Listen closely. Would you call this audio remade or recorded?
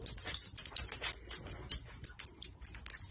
recorded